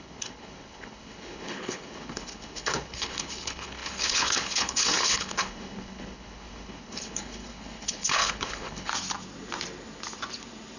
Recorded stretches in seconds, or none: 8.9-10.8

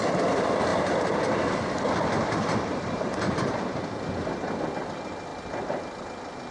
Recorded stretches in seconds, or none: 0.0-6.5